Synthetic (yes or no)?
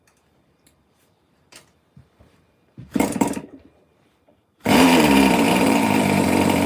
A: yes